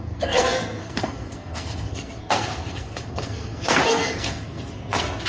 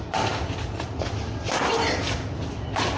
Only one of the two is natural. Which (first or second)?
second